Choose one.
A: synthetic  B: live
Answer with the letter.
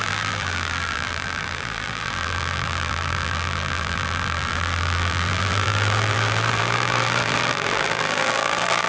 A